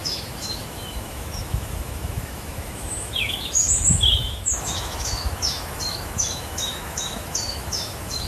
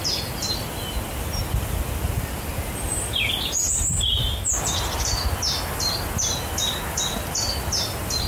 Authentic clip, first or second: second